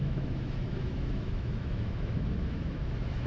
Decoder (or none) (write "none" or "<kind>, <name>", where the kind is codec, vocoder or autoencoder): autoencoder, DAC-VAE